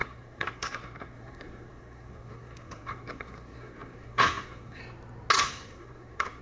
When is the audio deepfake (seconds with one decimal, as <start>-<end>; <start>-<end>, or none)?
0.0-4.8; 5.4-6.4